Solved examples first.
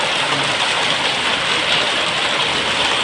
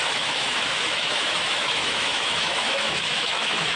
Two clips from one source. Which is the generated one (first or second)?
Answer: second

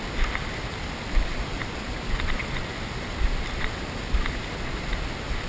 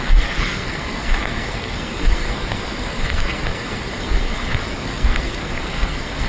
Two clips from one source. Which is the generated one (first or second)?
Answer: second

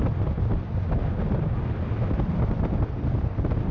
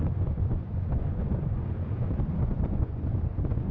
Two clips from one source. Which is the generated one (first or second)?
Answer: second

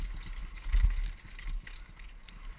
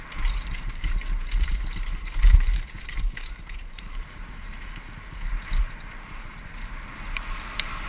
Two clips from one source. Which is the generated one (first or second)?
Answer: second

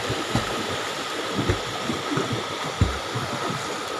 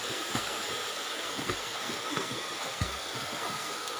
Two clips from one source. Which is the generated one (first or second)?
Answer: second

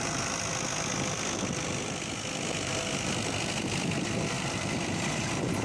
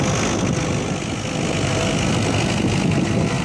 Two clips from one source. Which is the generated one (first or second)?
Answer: first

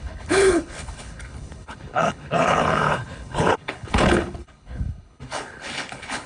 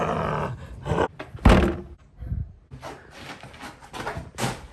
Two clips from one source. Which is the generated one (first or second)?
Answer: first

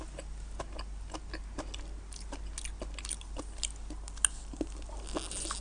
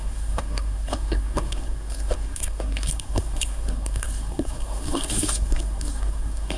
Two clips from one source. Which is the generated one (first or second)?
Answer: second